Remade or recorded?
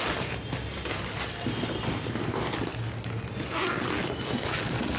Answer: recorded